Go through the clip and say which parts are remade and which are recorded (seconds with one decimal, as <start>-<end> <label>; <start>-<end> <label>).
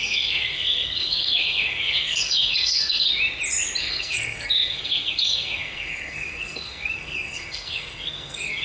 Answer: 0.0-3.1 remade; 3.1-3.8 recorded; 3.8-8.6 remade